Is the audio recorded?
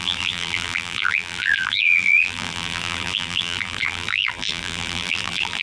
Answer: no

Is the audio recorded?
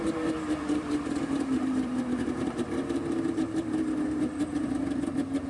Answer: no